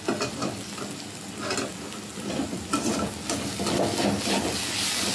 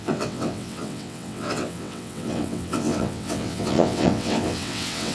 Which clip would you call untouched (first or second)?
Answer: first